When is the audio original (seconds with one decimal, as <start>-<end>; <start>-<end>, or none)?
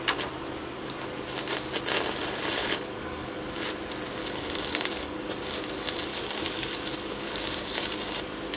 0.0-2.6; 3.4-4.2; 5.6-6.1; 8.0-8.6